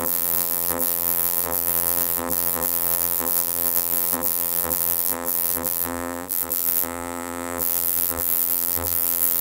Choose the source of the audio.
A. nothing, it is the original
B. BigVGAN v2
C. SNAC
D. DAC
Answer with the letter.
B